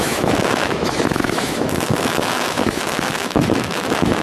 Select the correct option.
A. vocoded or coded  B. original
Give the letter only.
A